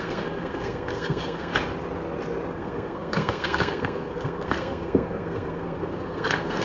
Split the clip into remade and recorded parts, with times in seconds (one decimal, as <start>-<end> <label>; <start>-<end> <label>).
0.0-1.5 remade; 1.5-2.5 recorded; 2.5-6.6 remade